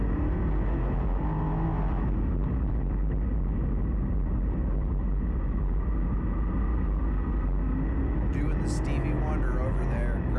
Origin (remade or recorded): recorded